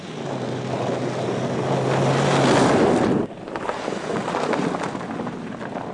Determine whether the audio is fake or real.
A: real